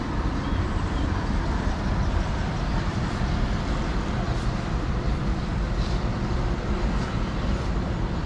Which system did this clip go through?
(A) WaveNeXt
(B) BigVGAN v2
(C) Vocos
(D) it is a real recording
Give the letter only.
B